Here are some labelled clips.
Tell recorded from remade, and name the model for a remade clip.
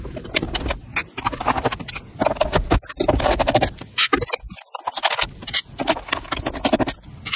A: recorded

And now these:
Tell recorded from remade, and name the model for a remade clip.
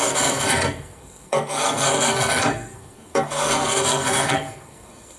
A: remade, codec, SNAC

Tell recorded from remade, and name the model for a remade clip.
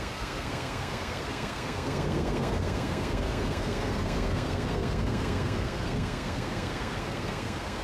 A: remade, codec, SNAC